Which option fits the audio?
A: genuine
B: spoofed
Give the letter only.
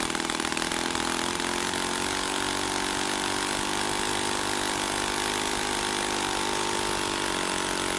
A